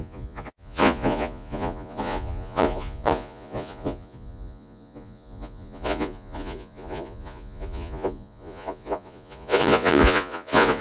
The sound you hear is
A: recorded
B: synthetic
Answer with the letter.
B